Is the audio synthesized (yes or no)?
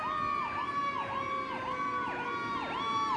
no